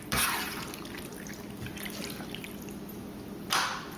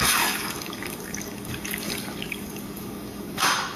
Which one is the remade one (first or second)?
second